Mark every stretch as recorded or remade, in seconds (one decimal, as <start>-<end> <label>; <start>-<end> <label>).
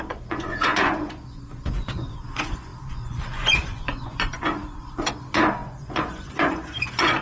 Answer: 0.0-7.2 remade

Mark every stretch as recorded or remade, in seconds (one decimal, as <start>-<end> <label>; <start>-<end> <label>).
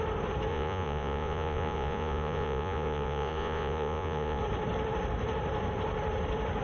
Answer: 0.0-0.5 recorded; 0.5-4.4 remade; 4.4-6.6 recorded